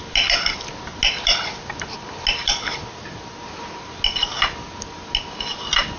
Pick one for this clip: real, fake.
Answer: real